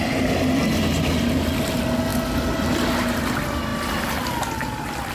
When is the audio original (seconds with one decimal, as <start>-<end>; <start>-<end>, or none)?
0.0-5.1